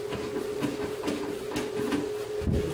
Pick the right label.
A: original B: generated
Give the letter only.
A